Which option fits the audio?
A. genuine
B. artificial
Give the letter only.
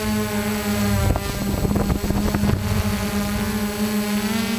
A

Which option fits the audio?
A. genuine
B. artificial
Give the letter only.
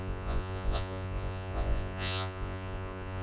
B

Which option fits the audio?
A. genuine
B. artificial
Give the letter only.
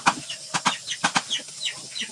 A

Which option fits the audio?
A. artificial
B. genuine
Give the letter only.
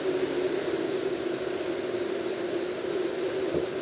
B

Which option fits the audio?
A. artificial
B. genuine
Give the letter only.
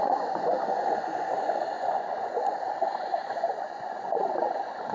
A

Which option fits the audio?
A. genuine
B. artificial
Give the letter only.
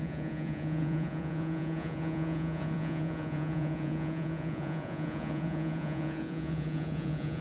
B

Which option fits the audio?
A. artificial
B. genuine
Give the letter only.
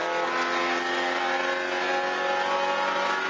B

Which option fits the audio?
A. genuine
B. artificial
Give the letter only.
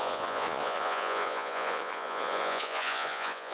B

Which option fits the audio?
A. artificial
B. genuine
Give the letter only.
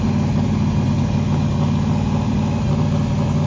B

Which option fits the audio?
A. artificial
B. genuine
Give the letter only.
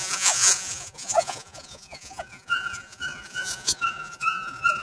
A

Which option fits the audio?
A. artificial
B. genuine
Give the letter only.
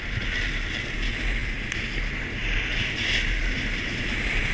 B